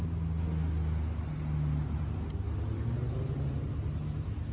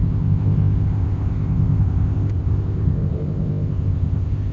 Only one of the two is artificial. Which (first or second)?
second